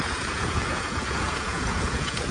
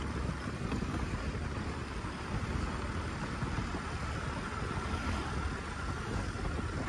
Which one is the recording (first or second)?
second